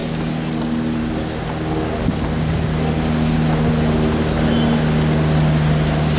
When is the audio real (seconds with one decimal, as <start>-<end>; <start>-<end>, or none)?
0.0-6.2